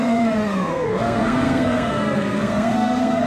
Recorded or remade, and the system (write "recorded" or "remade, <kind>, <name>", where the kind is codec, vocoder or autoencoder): remade, codec, SNAC